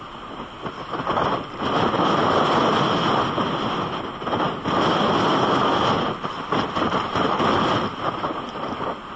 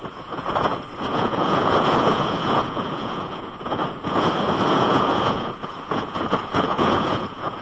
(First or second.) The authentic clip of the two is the first